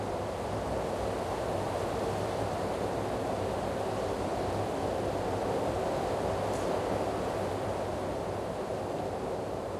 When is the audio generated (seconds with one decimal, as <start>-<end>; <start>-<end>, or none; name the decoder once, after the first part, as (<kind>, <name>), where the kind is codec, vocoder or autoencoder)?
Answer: none